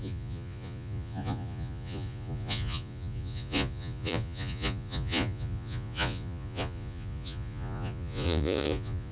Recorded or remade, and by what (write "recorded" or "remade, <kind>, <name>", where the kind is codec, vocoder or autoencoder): remade, vocoder, Vocos